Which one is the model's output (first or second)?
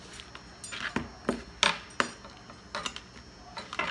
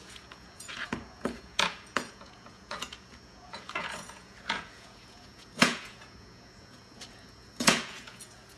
second